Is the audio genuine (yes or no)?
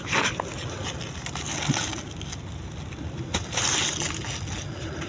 yes